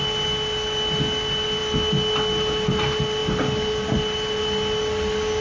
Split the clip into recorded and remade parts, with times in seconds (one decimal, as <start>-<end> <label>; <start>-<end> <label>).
0.0-5.4 recorded